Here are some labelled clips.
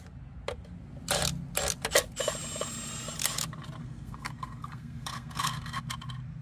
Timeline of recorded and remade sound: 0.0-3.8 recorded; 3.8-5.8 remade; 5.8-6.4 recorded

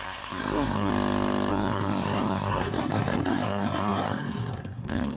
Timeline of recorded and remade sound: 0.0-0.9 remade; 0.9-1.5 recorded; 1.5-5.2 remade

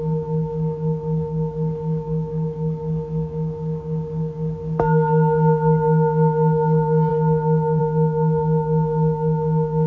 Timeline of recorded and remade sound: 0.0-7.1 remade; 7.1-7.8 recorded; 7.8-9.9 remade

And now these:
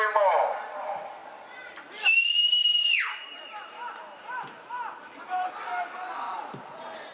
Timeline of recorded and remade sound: 0.0-7.1 recorded